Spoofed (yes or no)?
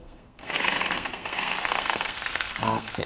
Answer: yes